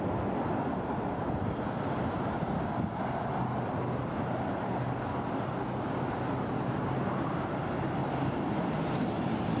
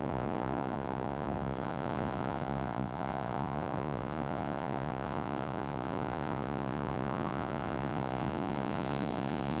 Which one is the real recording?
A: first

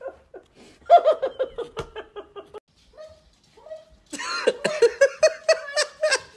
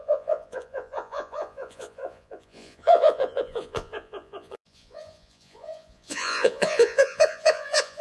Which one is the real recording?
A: first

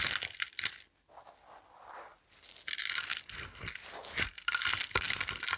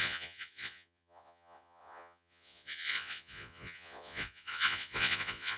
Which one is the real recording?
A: first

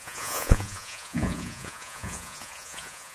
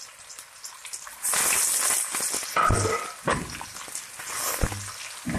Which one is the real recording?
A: second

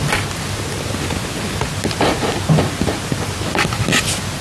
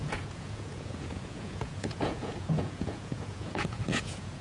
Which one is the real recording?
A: first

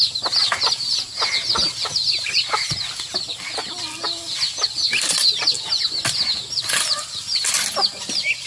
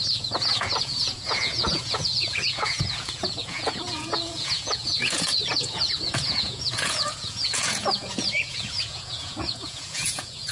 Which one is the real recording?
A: first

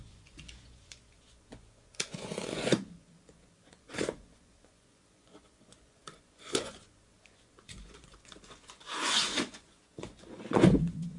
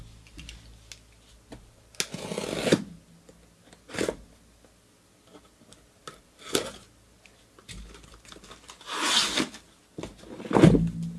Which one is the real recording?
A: second